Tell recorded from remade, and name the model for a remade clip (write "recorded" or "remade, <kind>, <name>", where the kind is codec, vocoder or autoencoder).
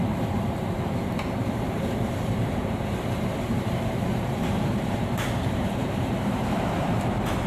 remade, vocoder, BigVGAN v2